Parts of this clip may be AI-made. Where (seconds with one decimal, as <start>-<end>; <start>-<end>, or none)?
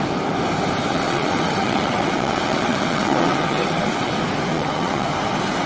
0.9-4.1; 4.5-5.1